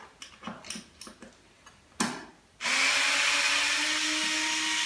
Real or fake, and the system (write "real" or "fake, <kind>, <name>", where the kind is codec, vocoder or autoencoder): real